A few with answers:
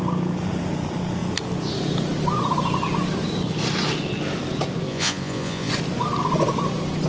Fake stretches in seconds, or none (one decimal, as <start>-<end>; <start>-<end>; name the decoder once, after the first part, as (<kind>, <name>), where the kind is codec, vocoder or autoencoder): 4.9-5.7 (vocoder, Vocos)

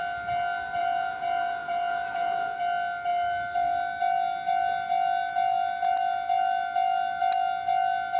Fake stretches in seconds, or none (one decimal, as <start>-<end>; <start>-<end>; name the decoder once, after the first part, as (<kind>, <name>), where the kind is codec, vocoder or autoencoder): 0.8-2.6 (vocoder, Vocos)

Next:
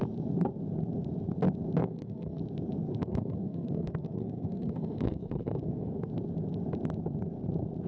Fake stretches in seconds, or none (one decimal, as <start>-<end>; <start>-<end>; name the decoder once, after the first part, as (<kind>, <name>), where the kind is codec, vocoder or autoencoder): 1.8-2.4 (codec, SNAC); 2.9-6.1

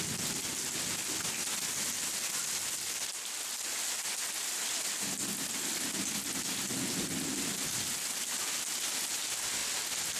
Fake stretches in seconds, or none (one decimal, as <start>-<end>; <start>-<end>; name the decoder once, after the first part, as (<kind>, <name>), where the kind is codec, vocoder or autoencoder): none